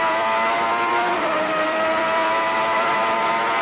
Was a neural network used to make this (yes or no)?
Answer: yes